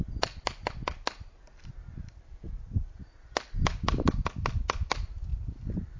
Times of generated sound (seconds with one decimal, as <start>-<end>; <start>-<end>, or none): none